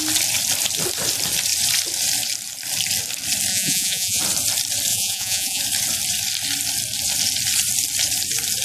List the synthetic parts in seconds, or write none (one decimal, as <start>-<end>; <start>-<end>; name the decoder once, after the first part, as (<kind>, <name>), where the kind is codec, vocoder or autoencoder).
3.5-4.2 (vocoder, Vocos); 4.9-5.6